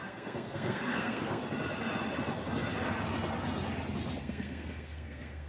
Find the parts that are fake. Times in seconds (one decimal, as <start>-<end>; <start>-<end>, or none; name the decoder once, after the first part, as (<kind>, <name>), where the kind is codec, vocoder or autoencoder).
0.0-1.4 (codec, SNAC); 4.2-5.5